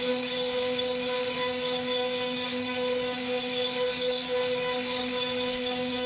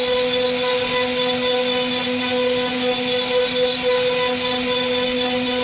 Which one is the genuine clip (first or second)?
second